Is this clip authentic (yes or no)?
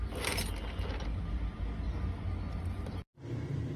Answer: yes